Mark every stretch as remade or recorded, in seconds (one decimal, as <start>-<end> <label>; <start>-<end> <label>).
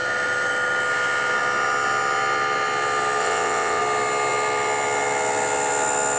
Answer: 0.0-3.2 recorded; 3.2-3.8 remade; 3.8-6.2 recorded